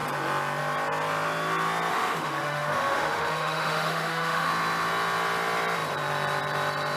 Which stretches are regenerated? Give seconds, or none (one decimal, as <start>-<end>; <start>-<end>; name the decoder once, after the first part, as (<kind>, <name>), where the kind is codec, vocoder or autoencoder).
1.9-4.5 (autoencoder, DAC-VAE)

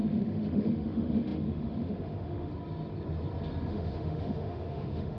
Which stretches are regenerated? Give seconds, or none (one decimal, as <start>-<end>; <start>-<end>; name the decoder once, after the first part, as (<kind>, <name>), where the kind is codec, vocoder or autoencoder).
0.0-2.5 (autoencoder, DAC-VAE); 3.7-5.2